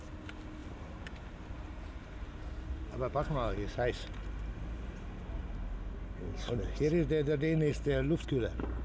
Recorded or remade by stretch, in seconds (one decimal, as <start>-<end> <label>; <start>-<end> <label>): 0.0-0.6 recorded; 0.6-2.7 remade; 2.7-8.8 recorded